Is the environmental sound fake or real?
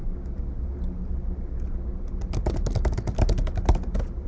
real